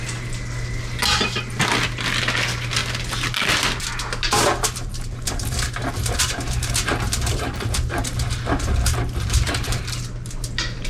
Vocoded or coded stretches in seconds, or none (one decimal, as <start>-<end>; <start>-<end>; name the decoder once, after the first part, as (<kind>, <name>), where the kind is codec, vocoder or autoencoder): 4.9-10.0 (vocoder, BigVGAN v2)